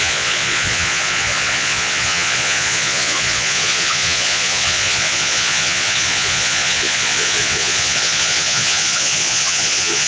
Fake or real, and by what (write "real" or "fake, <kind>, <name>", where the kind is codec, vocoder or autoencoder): fake, vocoder, Vocos